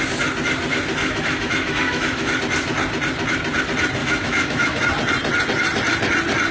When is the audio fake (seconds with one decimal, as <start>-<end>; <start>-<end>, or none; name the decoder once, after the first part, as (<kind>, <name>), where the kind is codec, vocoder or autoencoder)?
1.0-2.4 (autoencoder, DAC-VAE); 4.0-4.8